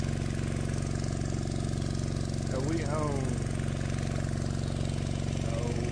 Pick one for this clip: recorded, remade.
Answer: recorded